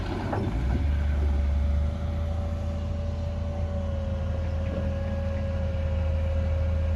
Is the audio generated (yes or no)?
no